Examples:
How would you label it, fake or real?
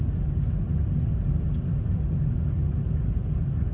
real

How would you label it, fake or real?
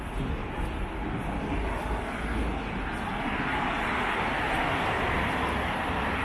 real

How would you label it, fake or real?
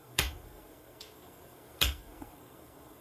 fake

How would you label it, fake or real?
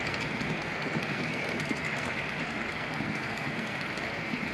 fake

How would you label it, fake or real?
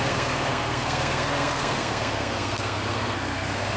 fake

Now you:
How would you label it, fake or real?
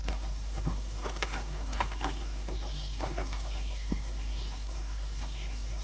fake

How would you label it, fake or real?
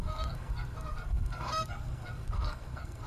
fake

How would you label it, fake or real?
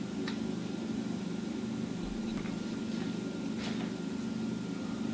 real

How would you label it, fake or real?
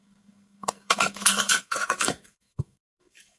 fake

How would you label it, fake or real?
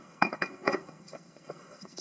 fake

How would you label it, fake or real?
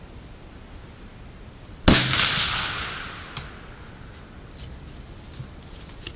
real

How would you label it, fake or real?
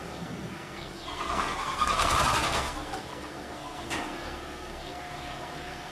fake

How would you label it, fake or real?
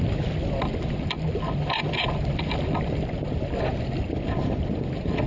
real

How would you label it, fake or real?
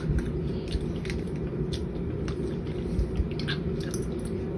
real